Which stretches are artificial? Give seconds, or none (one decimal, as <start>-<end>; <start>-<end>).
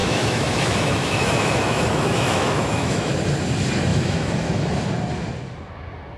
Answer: 0.0-3.1; 3.9-4.7